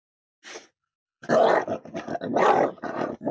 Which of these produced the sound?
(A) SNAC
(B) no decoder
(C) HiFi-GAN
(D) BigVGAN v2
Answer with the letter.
B